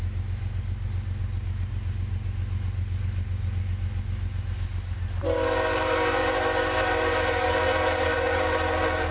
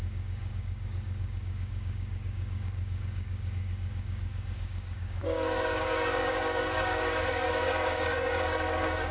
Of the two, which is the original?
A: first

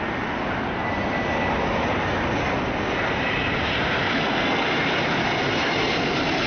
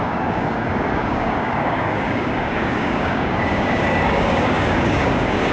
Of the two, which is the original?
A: first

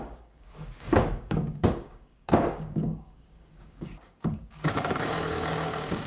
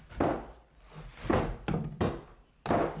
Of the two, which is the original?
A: second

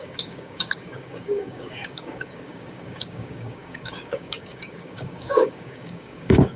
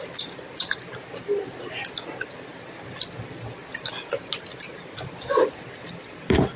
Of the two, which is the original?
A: second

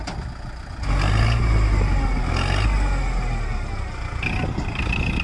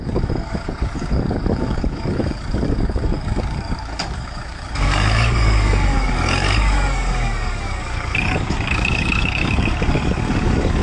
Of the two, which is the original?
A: first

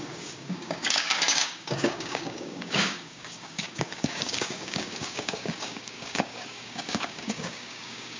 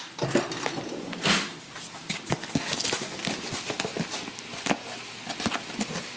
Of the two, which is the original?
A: second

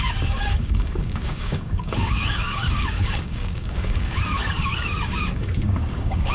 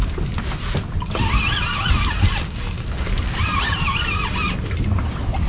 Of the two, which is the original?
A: second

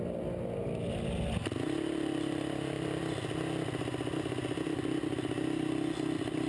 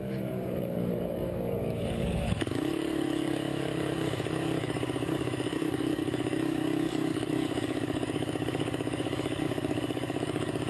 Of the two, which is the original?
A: first